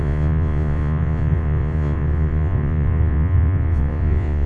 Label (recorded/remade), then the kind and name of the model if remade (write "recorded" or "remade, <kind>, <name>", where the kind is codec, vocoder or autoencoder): remade, vocoder, Vocos